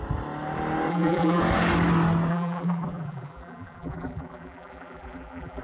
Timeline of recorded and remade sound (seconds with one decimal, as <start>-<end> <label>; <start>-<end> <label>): 0.0-0.9 recorded; 0.9-1.4 remade; 1.4-2.3 recorded; 2.3-5.6 remade